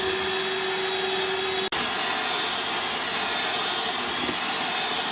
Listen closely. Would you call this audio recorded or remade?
recorded